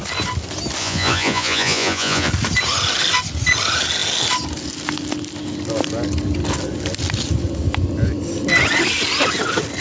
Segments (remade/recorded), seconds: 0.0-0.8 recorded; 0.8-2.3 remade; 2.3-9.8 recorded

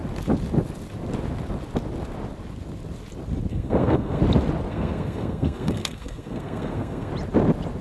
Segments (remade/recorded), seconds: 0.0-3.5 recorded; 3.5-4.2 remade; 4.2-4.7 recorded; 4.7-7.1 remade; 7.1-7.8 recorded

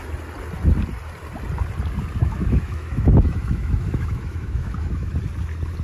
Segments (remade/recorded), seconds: 0.0-2.2 recorded; 2.2-5.1 remade; 5.1-5.8 recorded